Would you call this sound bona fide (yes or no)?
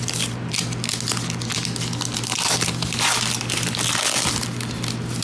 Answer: yes